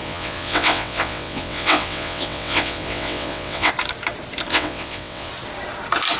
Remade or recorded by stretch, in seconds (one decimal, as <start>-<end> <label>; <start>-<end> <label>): 0.0-3.7 remade; 3.7-4.5 recorded; 4.5-5.3 remade; 5.3-6.2 recorded

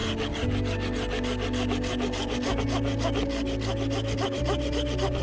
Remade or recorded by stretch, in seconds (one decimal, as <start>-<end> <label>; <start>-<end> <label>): 0.0-5.2 recorded